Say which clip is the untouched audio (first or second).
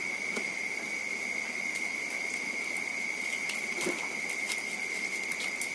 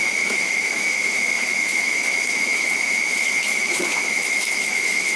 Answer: first